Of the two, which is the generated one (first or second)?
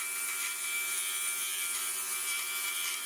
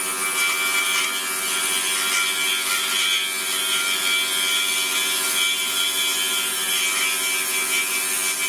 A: first